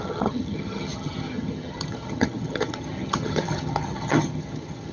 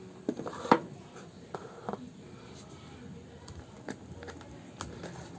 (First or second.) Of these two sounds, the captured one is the second